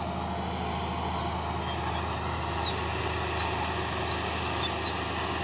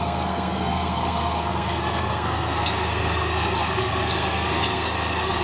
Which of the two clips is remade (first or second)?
second